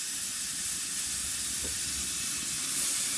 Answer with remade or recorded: recorded